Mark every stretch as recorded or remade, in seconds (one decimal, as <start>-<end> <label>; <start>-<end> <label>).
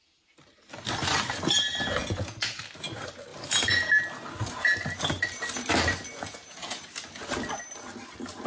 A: 0.0-2.0 recorded; 2.0-2.6 remade; 2.6-6.1 recorded; 6.1-6.8 remade; 6.8-8.5 recorded